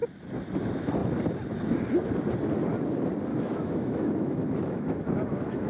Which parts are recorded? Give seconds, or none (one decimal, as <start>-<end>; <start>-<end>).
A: 0.0-3.3